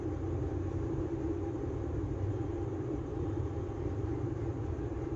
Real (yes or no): no